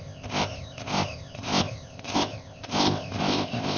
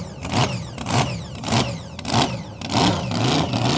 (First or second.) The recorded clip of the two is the second